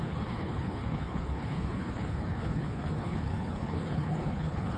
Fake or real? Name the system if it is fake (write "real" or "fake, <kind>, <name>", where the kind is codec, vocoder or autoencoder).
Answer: fake, codec, HILCodec